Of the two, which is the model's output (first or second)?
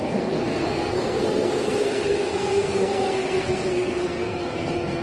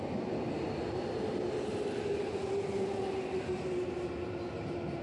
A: first